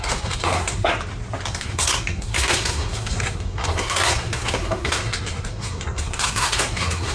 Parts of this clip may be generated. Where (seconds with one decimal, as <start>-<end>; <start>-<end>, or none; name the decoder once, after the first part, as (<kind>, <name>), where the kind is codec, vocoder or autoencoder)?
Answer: 0.0-0.9 (codec, SNAC); 1.5-7.1